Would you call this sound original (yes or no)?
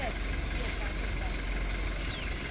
yes